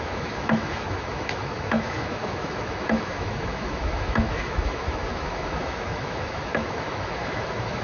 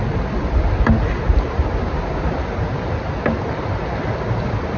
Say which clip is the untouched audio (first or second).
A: second